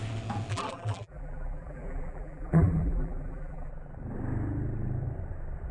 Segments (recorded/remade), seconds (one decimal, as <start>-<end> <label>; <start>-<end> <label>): 0.0-0.5 recorded; 0.5-3.7 remade; 3.7-5.7 recorded